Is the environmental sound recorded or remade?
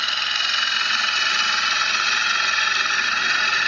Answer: recorded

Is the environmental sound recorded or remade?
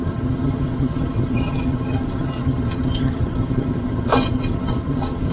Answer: remade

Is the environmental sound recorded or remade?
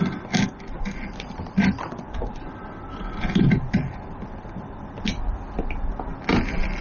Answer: recorded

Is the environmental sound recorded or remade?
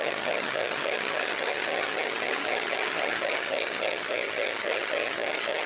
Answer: remade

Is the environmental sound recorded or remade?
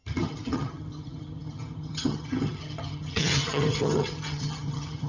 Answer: remade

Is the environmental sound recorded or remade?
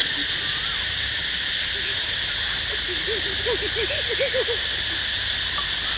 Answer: recorded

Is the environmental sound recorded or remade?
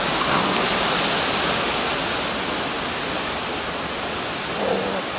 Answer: recorded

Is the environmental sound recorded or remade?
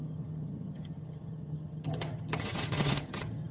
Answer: remade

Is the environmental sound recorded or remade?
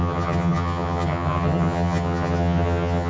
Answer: remade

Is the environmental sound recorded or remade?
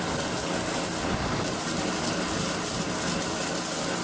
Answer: recorded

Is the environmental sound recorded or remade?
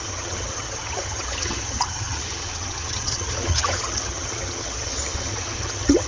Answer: remade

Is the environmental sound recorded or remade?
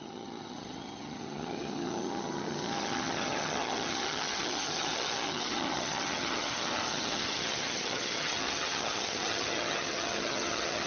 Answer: remade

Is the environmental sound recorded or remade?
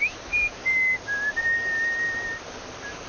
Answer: recorded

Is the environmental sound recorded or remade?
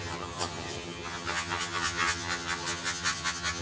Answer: remade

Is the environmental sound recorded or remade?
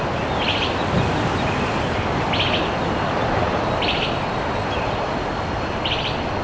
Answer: recorded